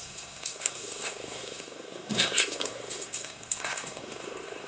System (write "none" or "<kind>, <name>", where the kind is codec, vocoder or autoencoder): codec, SNAC